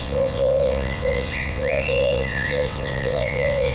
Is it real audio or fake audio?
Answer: fake